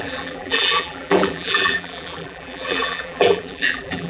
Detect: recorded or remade remade